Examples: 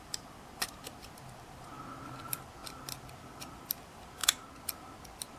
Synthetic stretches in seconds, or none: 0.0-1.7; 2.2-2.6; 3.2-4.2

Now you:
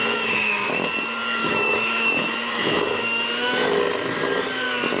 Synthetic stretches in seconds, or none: 0.0-0.7; 1.4-3.8

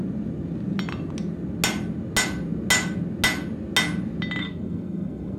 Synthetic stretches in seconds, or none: 4.4-5.4